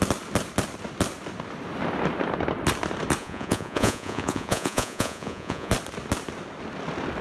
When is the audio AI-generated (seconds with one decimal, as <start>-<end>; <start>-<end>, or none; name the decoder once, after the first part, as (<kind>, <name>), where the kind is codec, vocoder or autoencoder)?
3.2-5.7 (vocoder, Vocos)